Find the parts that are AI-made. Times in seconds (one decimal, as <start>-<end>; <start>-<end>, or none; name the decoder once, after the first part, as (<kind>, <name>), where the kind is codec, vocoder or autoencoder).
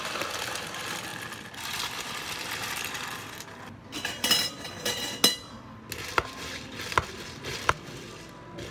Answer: 1.1-4.8 (vocoder, BigVGAN v2)